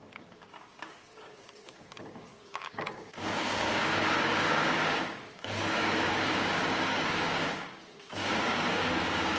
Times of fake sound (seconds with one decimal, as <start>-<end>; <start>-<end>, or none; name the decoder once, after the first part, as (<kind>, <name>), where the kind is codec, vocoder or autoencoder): 0.0-9.4 (codec, DAC)